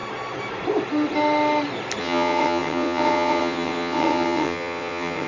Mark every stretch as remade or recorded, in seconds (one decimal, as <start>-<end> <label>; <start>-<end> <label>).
0.0-2.0 recorded; 2.0-5.3 remade